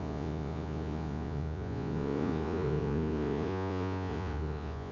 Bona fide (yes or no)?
no